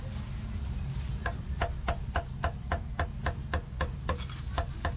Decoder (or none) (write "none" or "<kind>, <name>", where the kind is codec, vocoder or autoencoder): none